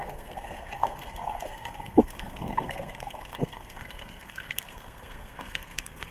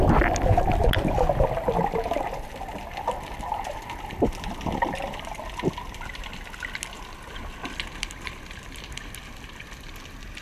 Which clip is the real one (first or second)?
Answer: second